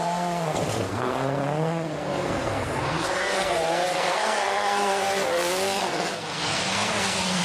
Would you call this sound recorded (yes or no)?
no